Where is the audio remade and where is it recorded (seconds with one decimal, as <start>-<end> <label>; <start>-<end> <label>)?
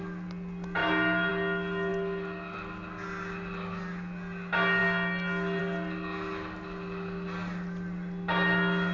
0.0-8.9 recorded